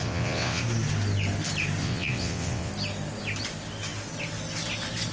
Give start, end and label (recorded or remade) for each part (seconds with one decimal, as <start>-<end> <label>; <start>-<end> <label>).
0.0-0.6 remade; 0.6-1.8 recorded; 1.8-2.7 remade; 2.7-5.1 recorded